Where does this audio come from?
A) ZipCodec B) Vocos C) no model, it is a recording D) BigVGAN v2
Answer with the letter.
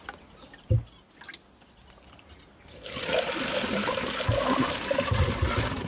C